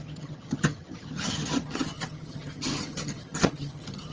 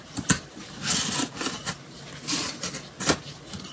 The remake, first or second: first